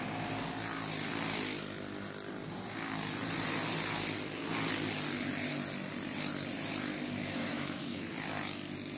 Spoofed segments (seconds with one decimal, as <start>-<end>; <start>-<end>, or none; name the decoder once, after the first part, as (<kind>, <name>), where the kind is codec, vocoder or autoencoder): 7.2-8.1 (autoencoder, DAC-VAE)